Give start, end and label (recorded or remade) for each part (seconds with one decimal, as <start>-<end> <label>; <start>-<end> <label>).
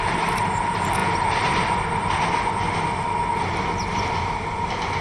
0.0-5.0 recorded